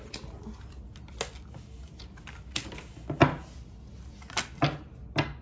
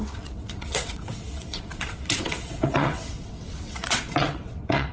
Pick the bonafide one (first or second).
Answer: first